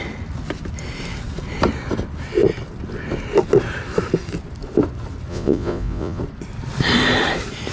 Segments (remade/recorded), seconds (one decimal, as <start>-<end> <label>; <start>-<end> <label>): 0.0-5.3 recorded; 5.3-6.2 remade; 6.2-7.7 recorded